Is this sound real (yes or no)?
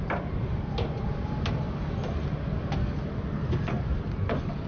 yes